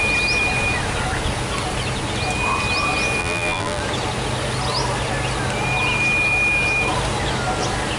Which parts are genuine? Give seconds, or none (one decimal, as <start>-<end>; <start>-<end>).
0.0-3.2; 3.8-8.0